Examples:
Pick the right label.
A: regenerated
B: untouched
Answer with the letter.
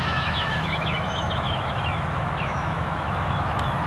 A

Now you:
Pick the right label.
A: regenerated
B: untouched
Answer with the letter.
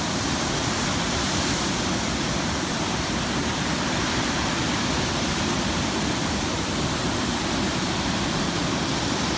A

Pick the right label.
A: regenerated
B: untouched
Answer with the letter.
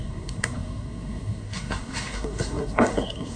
A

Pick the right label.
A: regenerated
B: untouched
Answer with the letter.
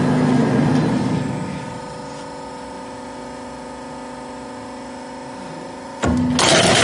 B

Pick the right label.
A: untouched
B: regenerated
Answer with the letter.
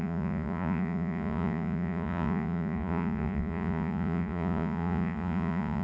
B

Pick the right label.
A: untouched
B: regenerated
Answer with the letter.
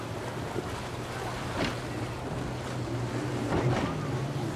A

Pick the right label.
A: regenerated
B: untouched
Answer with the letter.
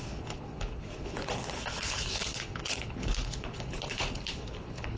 A